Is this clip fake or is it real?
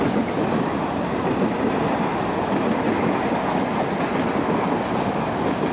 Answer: real